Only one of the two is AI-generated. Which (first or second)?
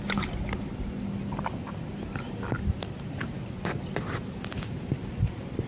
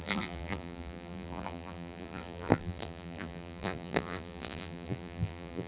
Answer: second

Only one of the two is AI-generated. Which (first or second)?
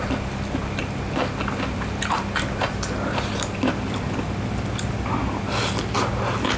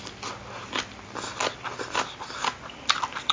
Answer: second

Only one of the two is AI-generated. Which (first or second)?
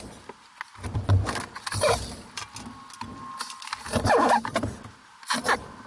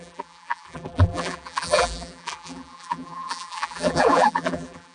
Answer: second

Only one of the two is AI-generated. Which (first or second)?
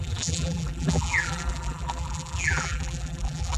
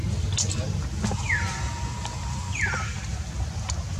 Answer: first